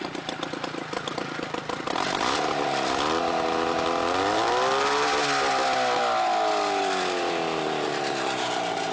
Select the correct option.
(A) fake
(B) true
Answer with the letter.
B